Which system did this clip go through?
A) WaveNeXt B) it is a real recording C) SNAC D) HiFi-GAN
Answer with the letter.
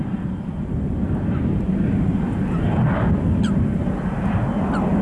B